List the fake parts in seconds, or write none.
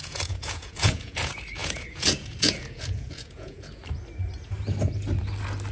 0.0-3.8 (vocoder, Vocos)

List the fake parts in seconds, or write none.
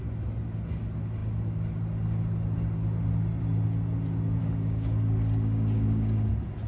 4.4-6.3 (codec, DAC)